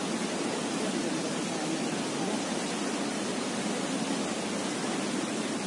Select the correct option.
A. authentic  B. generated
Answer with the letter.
A